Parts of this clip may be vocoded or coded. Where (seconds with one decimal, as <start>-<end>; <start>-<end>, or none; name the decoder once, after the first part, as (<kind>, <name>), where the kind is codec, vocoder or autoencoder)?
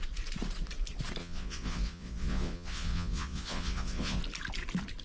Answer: 1.2-4.2 (vocoder, Vocos)